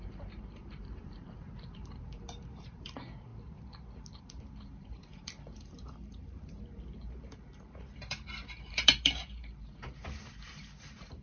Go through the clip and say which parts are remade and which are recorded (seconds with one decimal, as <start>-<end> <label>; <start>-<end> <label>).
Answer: 0.0-3.3 remade; 3.3-4.2 recorded; 4.2-11.2 remade